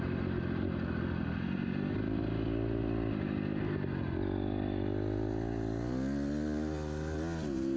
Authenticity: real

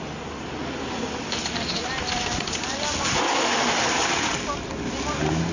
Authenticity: real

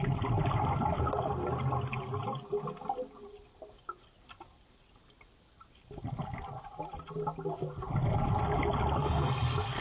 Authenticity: real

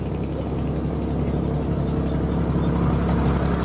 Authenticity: real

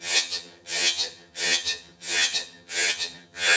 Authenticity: fake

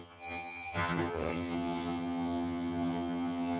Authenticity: fake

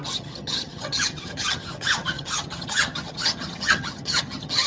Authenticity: fake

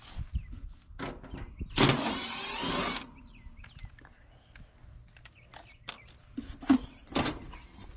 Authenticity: real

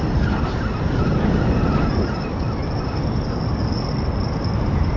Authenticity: real